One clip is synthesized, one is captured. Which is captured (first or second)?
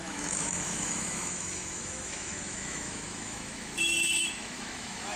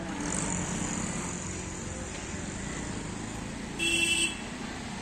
second